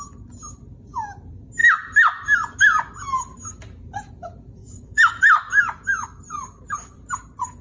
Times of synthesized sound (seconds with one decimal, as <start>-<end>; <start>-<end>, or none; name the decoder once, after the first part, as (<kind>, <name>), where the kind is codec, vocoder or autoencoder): 4.6-5.2 (autoencoder, DAC-VAE)